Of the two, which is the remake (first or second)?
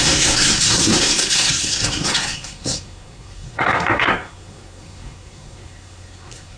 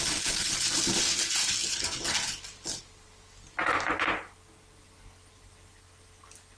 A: first